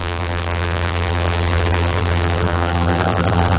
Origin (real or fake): fake